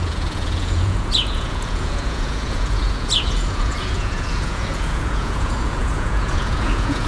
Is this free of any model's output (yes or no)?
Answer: no